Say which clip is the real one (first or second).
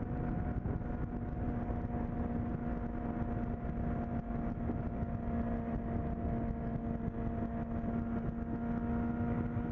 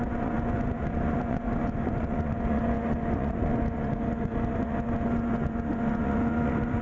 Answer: first